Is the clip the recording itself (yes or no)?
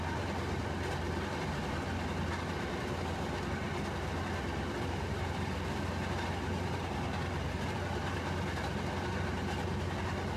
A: yes